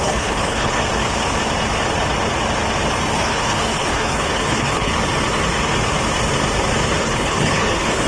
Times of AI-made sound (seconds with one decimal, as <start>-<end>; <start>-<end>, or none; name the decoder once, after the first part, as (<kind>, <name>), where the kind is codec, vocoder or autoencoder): 0.0-0.8 (codec, HILCodec); 3.1-4.9; 7.0-8.1